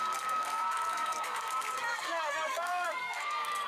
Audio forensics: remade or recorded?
remade